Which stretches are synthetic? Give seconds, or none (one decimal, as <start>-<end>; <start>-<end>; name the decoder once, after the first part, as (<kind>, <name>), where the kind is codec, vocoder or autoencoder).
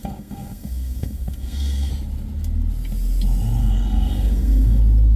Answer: 0.0-1.9 (codec, SNAC); 3.6-4.8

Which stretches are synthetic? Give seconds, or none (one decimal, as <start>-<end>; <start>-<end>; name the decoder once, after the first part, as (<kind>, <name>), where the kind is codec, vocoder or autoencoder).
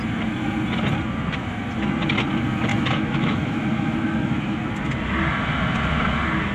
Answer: 2.7-4.6 (autoencoder, DAC-VAE)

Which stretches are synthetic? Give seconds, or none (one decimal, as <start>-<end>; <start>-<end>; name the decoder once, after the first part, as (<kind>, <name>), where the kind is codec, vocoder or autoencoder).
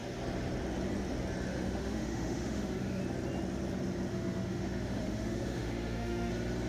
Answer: 1.5-3.0 (autoencoder, DAC-VAE); 4.1-6.3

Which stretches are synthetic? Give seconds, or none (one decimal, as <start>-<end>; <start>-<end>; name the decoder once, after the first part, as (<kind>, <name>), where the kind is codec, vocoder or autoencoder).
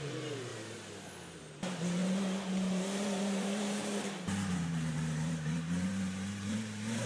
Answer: 0.0-0.5 (vocoder, BigVGAN v2); 1.4-2.0; 2.5-7.1